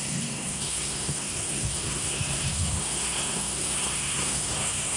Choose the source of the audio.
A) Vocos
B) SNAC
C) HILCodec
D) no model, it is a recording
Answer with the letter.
B